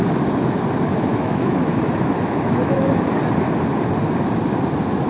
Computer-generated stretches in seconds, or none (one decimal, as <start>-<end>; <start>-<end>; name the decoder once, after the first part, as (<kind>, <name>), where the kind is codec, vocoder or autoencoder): 1.1-2.9 (autoencoder, DAC-VAE)